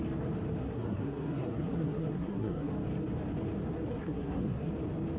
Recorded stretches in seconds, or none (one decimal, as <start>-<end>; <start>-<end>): 0.0-0.6; 2.7-3.9; 4.7-5.2